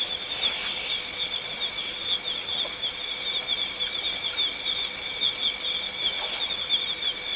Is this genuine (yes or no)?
yes